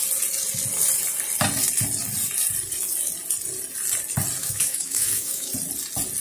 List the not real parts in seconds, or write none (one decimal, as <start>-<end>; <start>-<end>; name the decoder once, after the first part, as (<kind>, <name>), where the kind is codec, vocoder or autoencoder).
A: 4.4-5.5 (autoencoder, DAC-VAE)